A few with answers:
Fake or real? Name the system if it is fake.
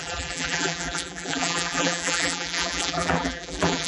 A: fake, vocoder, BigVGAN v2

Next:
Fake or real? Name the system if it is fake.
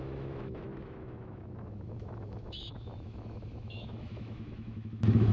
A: fake, autoencoder, DAC-VAE